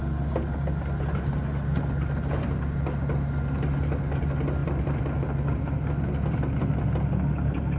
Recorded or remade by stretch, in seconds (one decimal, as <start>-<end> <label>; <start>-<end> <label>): 0.0-7.8 recorded